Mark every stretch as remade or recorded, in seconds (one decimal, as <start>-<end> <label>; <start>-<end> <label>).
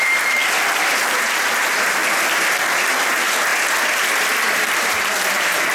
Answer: 0.0-0.4 remade; 0.4-1.1 recorded; 1.1-2.0 remade; 2.0-3.1 recorded; 3.1-3.5 remade; 3.5-4.7 recorded; 4.7-5.7 remade